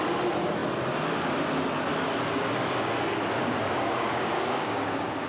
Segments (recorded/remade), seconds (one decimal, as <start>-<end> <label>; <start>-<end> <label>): 0.0-3.4 recorded; 3.4-5.3 remade